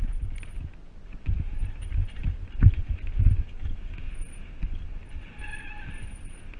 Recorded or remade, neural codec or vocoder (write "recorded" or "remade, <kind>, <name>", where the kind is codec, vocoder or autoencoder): recorded